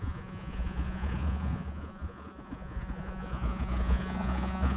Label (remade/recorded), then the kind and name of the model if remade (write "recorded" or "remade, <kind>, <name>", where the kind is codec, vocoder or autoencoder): remade, vocoder, Vocos